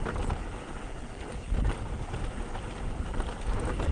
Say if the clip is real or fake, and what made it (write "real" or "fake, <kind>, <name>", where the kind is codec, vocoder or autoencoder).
real